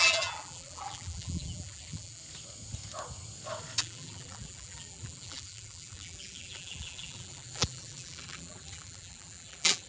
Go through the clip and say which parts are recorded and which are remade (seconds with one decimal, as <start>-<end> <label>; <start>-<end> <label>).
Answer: 0.0-2.2 remade; 2.2-3.8 recorded; 3.8-9.9 remade